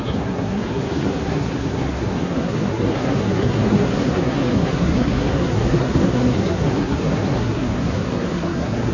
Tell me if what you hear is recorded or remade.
remade